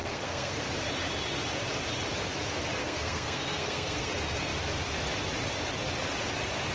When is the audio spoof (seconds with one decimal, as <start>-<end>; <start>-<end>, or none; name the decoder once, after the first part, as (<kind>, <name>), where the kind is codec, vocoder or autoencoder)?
0.0-0.6 (codec, SNAC); 2.8-4.1